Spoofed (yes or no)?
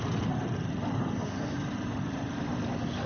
no